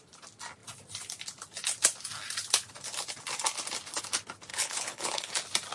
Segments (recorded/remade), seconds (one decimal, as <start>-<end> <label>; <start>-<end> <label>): 0.0-4.5 recorded; 4.5-5.3 remade; 5.3-5.7 recorded